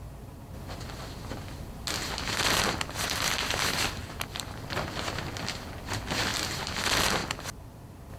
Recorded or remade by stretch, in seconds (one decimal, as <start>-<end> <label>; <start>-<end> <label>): 0.0-4.0 recorded; 4.0-4.7 remade; 4.7-6.3 recorded; 6.3-6.8 remade; 6.8-8.2 recorded

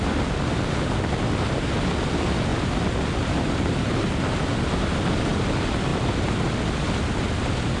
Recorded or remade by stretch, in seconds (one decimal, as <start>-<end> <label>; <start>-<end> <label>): 0.0-2.5 recorded; 2.5-3.9 remade; 3.9-5.9 recorded; 5.9-7.2 remade; 7.2-7.8 recorded

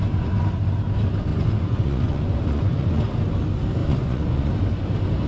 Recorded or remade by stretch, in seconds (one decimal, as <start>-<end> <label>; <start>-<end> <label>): 0.0-1.3 recorded; 1.3-3.0 remade; 3.0-3.8 recorded; 3.8-4.5 remade; 4.5-5.3 recorded

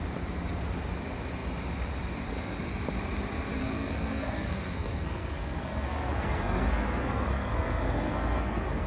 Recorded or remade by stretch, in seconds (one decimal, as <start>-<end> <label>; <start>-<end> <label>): 0.0-3.6 recorded; 3.6-8.9 remade

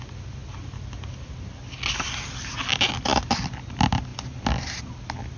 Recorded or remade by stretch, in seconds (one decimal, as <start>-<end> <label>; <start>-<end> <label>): 0.0-5.4 recorded

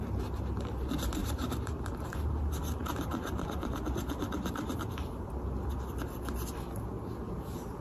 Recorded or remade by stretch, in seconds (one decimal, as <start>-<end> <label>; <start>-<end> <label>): 0.0-1.2 recorded; 1.2-1.8 remade; 1.8-2.8 recorded; 2.8-5.3 remade; 5.3-7.8 recorded

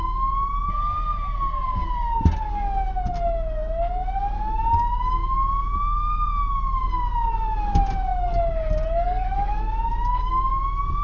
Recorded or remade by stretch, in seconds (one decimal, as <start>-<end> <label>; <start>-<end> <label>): 0.0-11.0 recorded

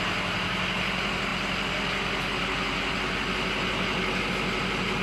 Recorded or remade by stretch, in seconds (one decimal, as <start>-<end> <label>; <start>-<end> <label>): 0.0-5.0 recorded